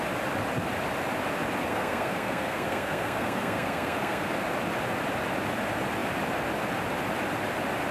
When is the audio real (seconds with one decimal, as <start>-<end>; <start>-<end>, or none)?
0.0-1.6; 4.3-7.9